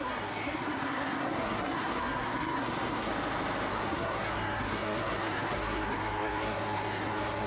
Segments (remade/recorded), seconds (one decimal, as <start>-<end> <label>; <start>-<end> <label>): 0.0-3.1 remade; 3.1-3.7 recorded; 3.7-7.5 remade